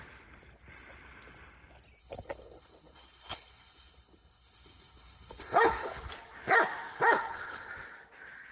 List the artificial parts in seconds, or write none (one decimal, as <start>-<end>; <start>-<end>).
2.0-6.1; 6.9-7.7